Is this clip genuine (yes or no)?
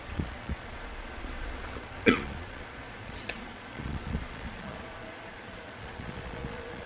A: no